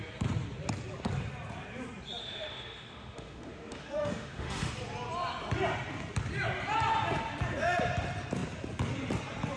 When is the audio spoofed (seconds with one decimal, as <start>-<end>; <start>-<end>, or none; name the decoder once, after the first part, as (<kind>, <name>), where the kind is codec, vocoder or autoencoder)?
2.2-4.7 (autoencoder, DAC-VAE)